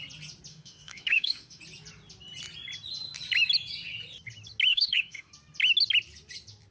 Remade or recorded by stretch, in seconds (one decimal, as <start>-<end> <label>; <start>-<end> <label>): 0.0-0.5 recorded; 0.5-1.6 remade; 1.6-4.7 recorded; 4.7-5.3 remade; 5.3-6.7 recorded